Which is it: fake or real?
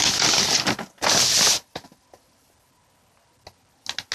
real